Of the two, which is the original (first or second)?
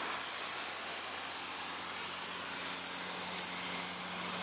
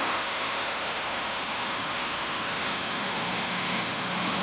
first